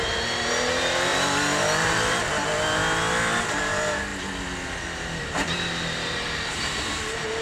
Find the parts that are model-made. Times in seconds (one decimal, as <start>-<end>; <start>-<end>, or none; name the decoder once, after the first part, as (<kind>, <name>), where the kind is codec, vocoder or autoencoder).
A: 0.0-2.8 (vocoder, BigVGAN v2); 3.5-4.1; 5.2-7.4